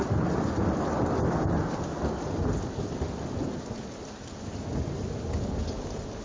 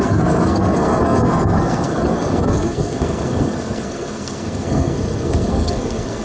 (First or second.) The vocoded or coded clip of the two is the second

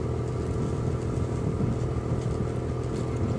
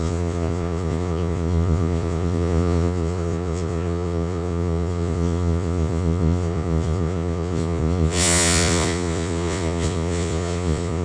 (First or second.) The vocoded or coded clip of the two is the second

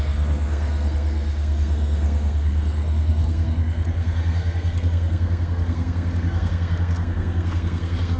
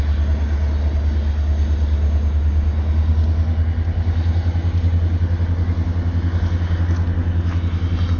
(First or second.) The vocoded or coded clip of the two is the first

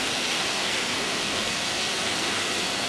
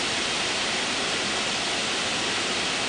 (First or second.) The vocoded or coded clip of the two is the first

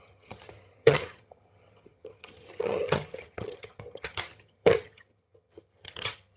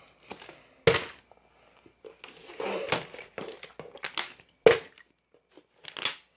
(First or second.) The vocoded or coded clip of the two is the first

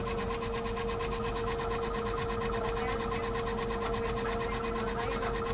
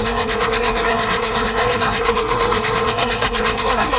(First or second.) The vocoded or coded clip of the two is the second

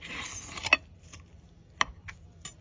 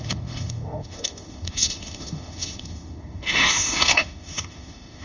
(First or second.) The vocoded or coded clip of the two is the second